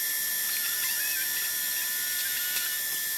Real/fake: real